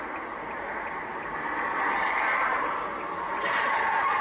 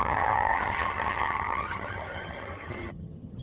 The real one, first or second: first